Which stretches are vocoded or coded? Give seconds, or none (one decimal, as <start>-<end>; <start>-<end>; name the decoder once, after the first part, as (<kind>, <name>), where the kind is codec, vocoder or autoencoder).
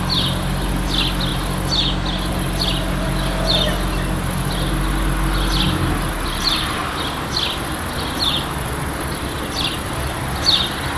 none